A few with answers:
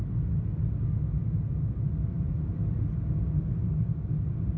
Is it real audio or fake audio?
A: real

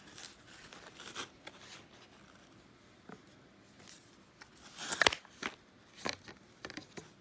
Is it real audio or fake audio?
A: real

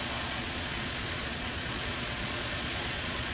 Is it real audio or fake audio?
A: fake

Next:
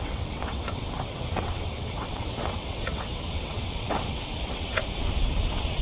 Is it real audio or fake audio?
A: fake